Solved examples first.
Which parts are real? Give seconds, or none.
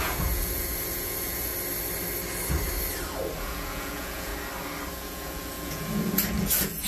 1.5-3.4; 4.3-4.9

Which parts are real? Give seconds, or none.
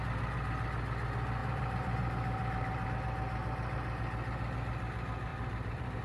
0.0-1.4; 2.9-5.3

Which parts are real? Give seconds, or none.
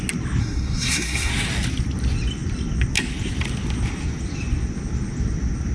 0.0-0.4; 1.3-5.7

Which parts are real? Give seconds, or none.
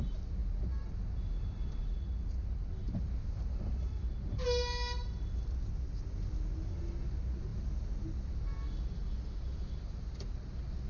0.0-10.9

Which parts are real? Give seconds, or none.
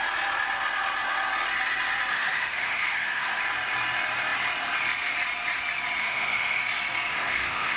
0.0-2.1; 3.4-6.0; 6.6-7.1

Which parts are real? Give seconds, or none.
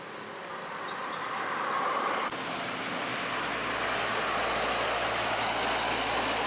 0.0-6.5